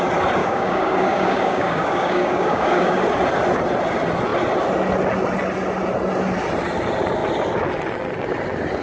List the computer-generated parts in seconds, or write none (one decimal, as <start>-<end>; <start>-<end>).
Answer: 0.4-3.0